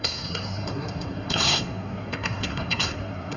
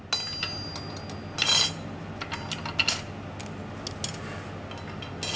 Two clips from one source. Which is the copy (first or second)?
first